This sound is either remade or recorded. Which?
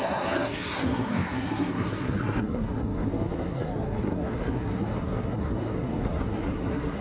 remade